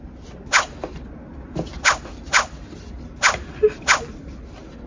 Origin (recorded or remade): recorded